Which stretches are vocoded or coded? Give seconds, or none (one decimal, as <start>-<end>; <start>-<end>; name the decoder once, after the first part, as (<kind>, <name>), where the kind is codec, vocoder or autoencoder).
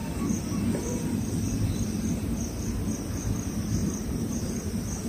3.8-4.4 (vocoder, BigVGAN v2)